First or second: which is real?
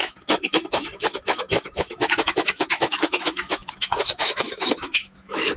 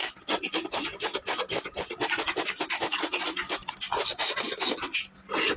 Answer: second